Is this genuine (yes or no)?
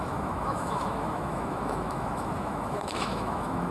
no